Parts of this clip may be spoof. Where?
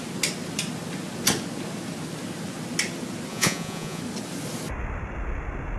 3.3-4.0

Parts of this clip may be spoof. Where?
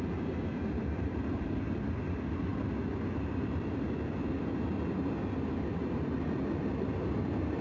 none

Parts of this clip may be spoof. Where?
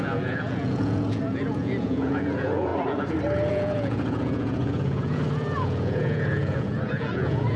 0.0-2.7; 3.5-7.6